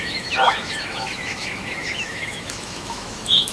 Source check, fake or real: fake